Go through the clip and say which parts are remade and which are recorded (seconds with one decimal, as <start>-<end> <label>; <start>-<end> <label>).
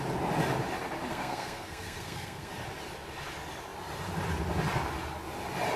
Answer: 0.0-1.1 recorded; 1.1-2.5 remade; 2.5-5.8 recorded